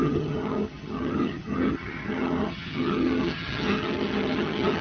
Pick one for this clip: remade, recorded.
remade